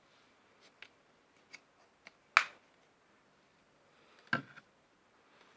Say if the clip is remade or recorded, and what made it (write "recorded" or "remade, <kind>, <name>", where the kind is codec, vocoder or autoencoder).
recorded